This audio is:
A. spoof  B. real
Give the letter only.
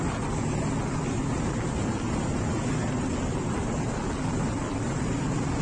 B